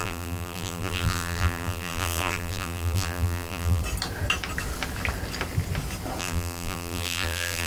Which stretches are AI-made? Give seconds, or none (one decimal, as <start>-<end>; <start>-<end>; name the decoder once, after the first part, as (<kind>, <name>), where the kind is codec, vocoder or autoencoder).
0.0-3.8 (vocoder, BigVGAN v2); 6.2-7.7